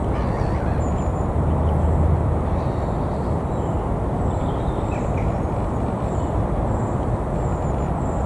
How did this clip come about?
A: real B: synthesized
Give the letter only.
A